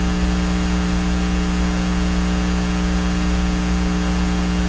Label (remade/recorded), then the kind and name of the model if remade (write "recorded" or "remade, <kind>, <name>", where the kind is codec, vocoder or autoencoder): recorded